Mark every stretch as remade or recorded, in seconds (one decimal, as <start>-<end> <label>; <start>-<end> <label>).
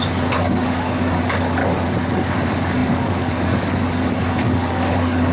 0.0-1.6 remade; 1.6-2.1 recorded; 2.1-5.3 remade